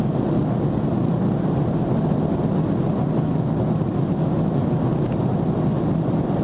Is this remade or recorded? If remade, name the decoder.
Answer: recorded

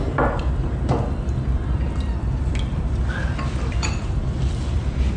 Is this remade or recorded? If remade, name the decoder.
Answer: remade, vocoder, BigVGAN v2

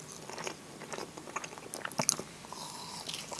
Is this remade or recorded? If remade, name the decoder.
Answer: recorded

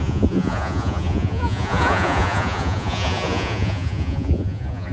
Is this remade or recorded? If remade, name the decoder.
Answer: remade, vocoder, Vocos